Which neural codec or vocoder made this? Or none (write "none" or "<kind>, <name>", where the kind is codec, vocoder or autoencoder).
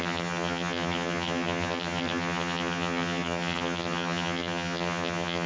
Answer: vocoder, HiFi-GAN